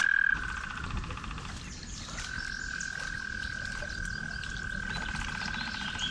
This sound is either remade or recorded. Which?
recorded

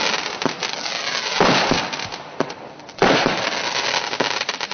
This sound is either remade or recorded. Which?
recorded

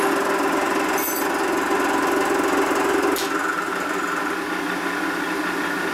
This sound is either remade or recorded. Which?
recorded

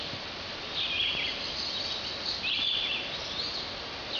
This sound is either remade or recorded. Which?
recorded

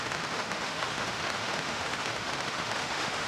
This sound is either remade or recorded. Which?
remade